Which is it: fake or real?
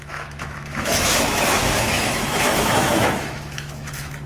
fake